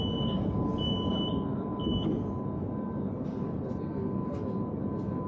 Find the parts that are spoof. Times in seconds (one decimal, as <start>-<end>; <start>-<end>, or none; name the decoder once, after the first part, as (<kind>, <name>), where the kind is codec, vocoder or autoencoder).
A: none